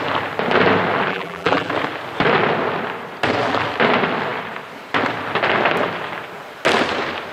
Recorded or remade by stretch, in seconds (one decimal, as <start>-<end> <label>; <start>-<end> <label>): 0.0-1.1 recorded; 1.1-1.7 remade; 1.7-7.3 recorded